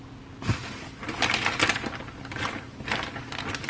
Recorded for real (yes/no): yes